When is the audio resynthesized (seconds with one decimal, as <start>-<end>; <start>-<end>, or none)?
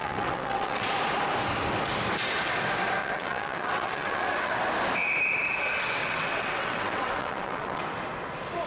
0.0-0.9; 3.0-4.5; 6.0-7.8